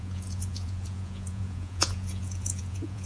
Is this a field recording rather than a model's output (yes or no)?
no